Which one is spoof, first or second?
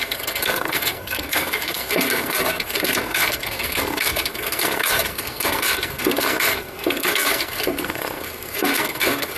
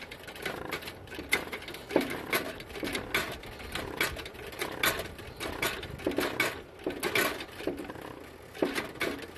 first